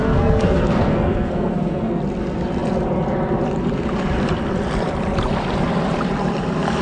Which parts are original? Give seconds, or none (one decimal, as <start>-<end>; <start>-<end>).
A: 2.0-6.8